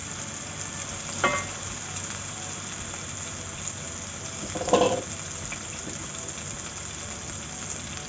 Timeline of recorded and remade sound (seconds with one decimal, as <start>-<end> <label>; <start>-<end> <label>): 0.0-8.1 recorded